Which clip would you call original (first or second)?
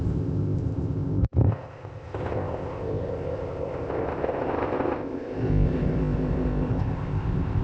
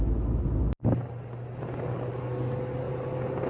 second